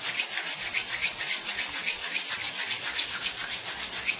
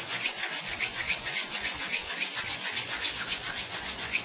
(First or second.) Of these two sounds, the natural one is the first